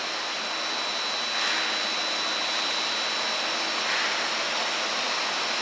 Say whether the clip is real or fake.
real